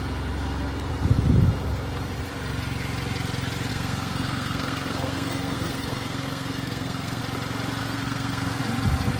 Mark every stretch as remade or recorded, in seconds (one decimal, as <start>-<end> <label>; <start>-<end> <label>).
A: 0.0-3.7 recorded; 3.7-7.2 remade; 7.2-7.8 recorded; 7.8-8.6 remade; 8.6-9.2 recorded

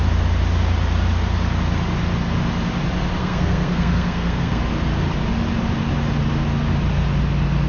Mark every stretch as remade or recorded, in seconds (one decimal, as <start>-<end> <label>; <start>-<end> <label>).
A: 0.0-3.2 recorded; 3.2-4.6 remade; 4.6-7.7 recorded

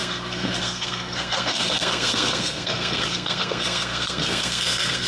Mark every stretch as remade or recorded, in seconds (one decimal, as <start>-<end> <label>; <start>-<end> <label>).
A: 0.0-5.1 remade

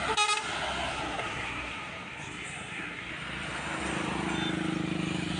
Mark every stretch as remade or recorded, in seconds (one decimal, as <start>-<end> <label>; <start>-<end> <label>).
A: 0.0-0.9 recorded; 0.9-3.1 remade; 3.1-5.4 recorded

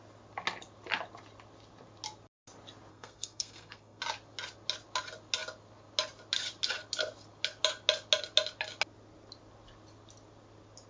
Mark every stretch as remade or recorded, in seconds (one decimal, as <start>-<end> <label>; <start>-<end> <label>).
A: 0.0-2.9 recorded; 2.9-4.0 remade; 4.0-10.9 recorded

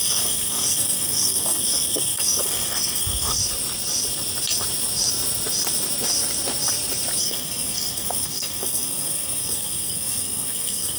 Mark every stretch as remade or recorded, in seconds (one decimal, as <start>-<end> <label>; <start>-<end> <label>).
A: 0.0-3.4 remade; 3.4-7.2 recorded; 7.2-11.0 remade

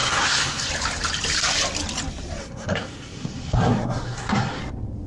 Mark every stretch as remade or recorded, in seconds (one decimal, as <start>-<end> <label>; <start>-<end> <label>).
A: 0.0-0.7 remade; 0.7-2.4 recorded; 2.4-4.6 remade; 4.6-5.1 recorded